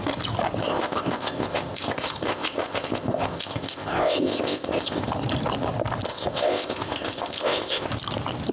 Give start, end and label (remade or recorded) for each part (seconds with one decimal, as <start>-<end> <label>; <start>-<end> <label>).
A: 0.0-0.6 recorded; 0.6-5.1 remade; 5.1-6.1 recorded; 6.1-7.9 remade; 7.9-8.5 recorded